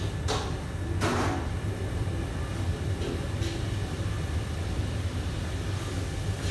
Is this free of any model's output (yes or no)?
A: yes